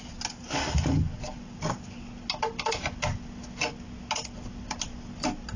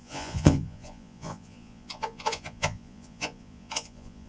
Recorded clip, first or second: first